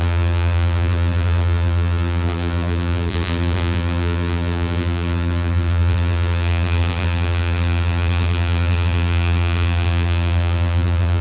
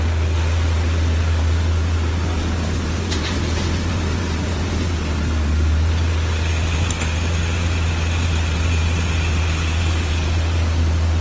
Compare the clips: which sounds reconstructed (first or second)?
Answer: first